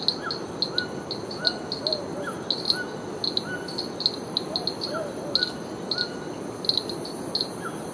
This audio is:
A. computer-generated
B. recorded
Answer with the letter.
B